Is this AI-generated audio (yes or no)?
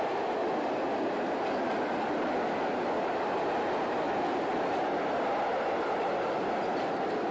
no